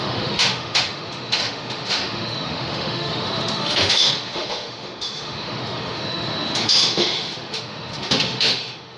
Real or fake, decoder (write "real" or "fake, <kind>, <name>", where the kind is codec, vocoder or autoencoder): fake, autoencoder, DAC-VAE